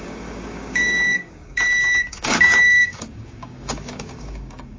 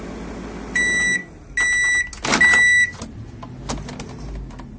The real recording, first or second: second